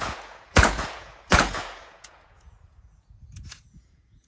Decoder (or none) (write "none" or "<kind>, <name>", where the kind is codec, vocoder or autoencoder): vocoder, Vocos